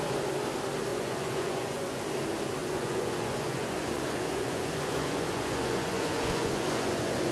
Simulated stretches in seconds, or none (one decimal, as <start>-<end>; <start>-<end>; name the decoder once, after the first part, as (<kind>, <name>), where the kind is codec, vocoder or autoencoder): 0.9-2.0 (vocoder, Vocos); 2.6-7.3